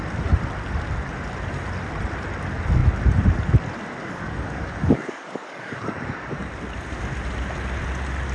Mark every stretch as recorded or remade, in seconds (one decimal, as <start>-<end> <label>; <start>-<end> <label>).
0.0-4.0 recorded; 4.0-6.5 remade; 6.5-8.3 recorded